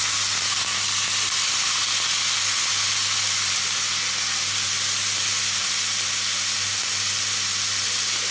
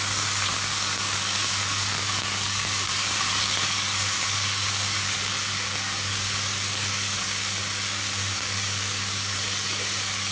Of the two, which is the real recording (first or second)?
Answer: first